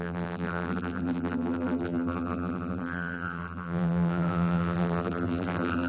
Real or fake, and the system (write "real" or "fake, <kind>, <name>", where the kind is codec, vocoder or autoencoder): fake, vocoder, BigVGAN v2